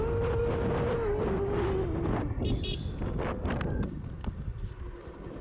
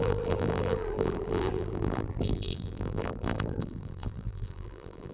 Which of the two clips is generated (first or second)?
second